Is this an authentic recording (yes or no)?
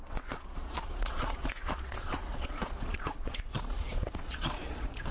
no